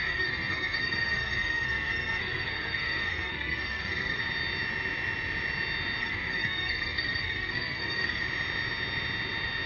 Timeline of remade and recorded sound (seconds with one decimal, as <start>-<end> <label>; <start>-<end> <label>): 0.0-4.2 remade; 4.2-6.0 recorded; 6.0-8.2 remade; 8.2-9.7 recorded